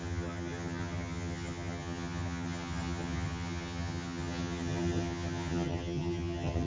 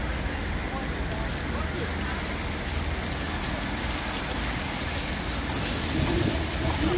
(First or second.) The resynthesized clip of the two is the first